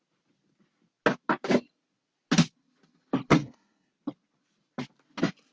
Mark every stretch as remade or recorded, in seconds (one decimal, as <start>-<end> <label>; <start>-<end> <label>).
0.0-3.3 recorded; 3.3-3.9 remade; 3.9-5.5 recorded

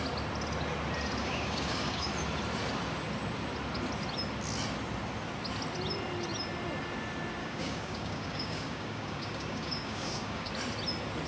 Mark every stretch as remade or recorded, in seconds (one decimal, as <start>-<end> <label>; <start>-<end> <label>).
0.0-1.2 recorded; 1.2-2.1 remade; 2.1-7.4 recorded; 7.4-10.5 remade; 10.5-11.3 recorded

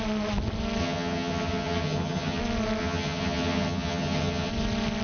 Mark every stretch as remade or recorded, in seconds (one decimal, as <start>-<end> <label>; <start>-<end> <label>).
0.0-0.8 recorded; 0.8-2.4 remade; 2.4-2.8 recorded; 2.8-4.5 remade; 4.5-5.0 recorded

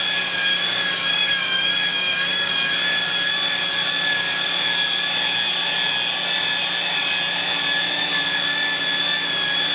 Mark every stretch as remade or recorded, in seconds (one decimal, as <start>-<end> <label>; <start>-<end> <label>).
0.0-0.5 recorded; 0.5-2.6 remade; 2.6-9.7 recorded